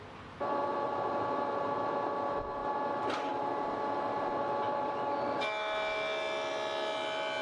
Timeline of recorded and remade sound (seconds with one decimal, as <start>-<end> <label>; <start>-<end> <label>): 0.0-7.4 recorded